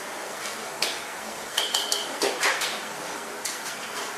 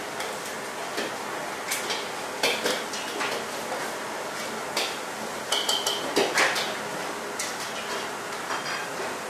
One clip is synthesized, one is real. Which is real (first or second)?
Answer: second